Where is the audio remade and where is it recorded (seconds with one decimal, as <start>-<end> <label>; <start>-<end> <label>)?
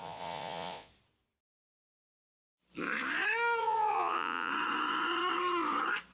0.0-0.9 remade; 0.9-3.6 recorded; 3.6-4.5 remade; 4.5-6.1 recorded